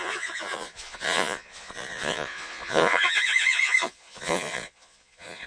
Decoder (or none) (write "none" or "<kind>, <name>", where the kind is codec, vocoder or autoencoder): vocoder, Vocos